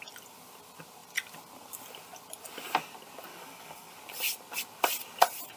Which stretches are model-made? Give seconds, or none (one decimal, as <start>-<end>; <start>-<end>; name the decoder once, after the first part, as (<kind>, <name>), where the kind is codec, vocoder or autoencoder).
3.3-3.9 (codec, DAC)